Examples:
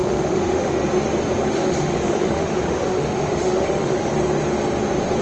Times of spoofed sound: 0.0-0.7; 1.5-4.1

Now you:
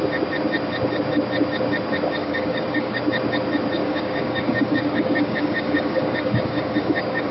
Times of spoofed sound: 2.2-3.0; 3.8-7.3

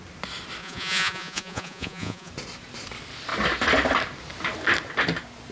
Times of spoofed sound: 0.6-2.3

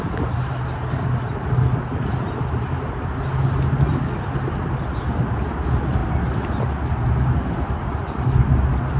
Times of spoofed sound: none

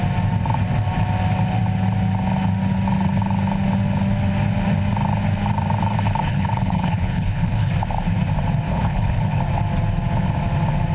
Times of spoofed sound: 6.2-7.7; 8.7-9.4